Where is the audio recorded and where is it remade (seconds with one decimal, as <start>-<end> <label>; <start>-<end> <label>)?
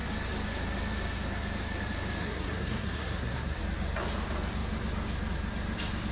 0.0-2.2 recorded; 2.2-3.6 remade; 3.6-6.1 recorded